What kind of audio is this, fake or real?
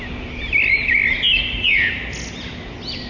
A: real